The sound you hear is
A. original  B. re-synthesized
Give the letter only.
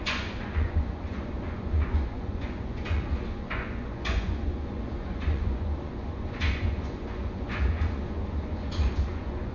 B